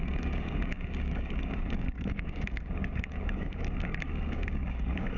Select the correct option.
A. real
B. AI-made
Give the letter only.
B